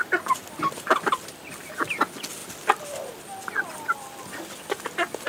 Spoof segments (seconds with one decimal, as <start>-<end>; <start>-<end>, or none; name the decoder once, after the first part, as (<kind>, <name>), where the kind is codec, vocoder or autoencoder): 0.4-1.7 (vocoder, BigVGAN v2)